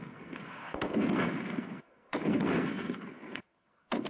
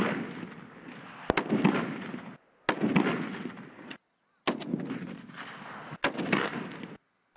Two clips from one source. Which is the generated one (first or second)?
first